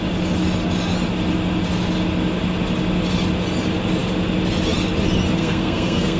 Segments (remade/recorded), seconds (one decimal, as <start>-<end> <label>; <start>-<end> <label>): 0.0-5.4 recorded; 5.4-6.2 remade

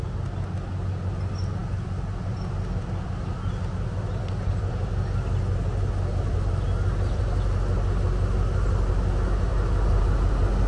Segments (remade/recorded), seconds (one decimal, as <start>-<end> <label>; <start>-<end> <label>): 0.0-10.7 recorded

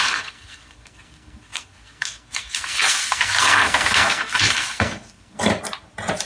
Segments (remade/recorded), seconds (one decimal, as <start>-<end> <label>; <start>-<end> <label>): 0.0-5.5 remade; 5.5-6.3 recorded

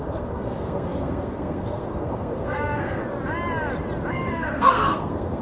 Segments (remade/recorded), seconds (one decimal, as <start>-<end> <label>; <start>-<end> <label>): 0.0-3.0 remade; 3.0-4.1 recorded; 4.1-5.4 remade

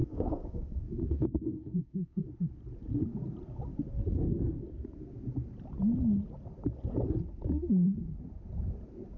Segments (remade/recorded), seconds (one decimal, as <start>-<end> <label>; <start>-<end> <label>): 0.0-2.2 remade; 2.2-9.2 recorded

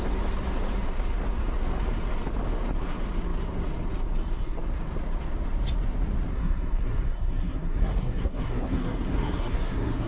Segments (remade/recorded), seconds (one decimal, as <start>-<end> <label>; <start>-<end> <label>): 0.0-6.3 recorded; 6.3-10.1 remade

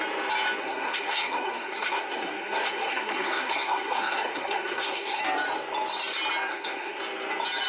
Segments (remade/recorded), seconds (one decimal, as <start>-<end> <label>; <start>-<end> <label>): 0.0-0.6 recorded; 0.6-5.2 remade; 5.2-6.5 recorded; 6.5-7.0 remade; 7.0-7.7 recorded